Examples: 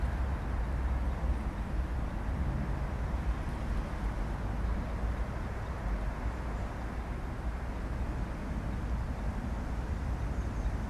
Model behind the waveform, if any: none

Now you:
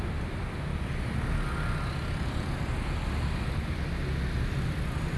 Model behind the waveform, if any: none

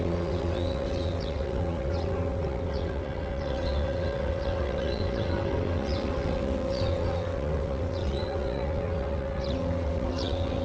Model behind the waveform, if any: vocoder, WaveNeXt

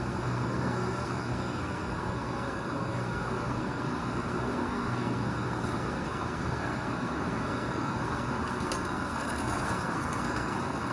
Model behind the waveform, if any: codec, SNAC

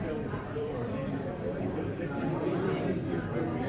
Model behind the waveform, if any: vocoder, BigVGAN v2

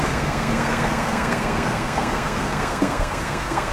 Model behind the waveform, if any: codec, SNAC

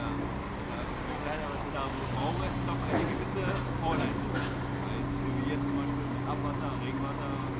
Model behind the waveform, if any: none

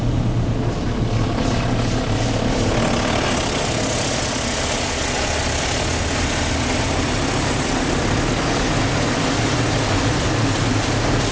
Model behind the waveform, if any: none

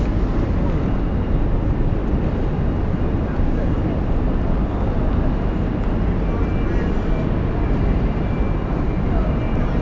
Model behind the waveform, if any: none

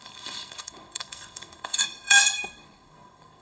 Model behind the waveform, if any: codec, SNAC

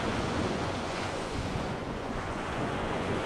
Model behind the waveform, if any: vocoder, Vocos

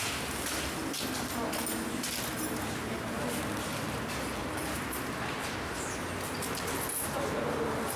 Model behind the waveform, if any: none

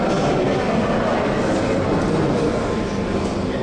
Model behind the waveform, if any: none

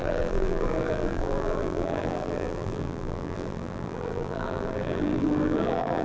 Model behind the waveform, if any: vocoder, BigVGAN v2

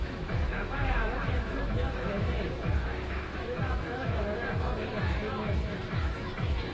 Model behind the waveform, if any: autoencoder, DAC-VAE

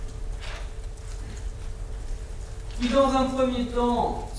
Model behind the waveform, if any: none